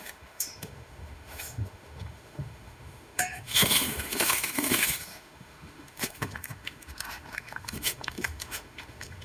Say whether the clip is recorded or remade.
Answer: remade